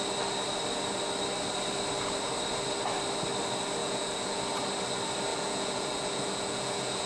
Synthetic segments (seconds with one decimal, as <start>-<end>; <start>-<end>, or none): 3.8-4.4; 5.3-7.1